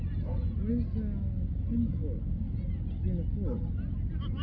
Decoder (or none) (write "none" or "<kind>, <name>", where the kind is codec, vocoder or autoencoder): none